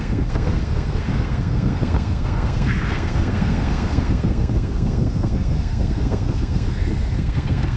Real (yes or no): no